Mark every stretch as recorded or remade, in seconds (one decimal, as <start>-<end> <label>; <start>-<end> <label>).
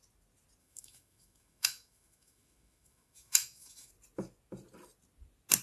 0.0-0.6 recorded; 0.6-3.9 remade; 3.9-5.6 recorded